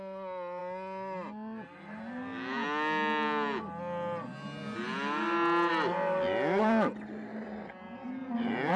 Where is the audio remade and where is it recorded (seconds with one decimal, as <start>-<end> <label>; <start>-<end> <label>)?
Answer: 0.0-7.3 recorded; 7.3-8.8 remade